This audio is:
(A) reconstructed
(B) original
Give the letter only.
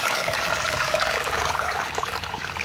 A